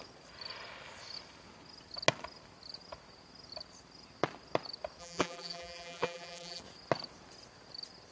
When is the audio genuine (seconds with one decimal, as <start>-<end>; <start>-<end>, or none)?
0.0-5.0; 6.6-8.1